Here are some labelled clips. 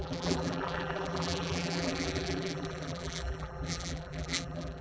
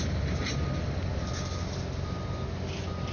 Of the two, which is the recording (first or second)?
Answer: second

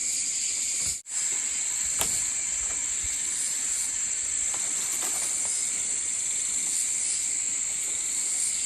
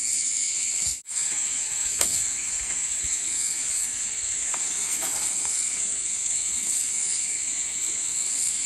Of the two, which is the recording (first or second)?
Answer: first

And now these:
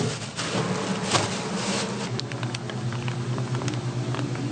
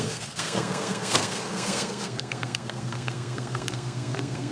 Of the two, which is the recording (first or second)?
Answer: first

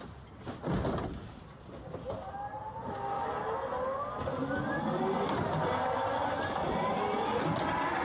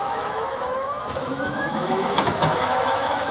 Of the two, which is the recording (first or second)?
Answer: first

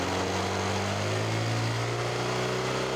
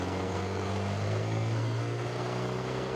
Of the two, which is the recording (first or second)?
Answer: first